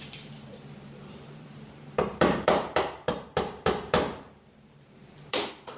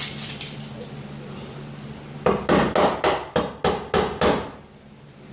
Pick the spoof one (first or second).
first